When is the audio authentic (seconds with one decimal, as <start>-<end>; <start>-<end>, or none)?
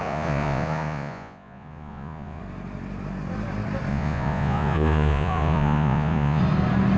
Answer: 2.4-3.9; 6.4-7.0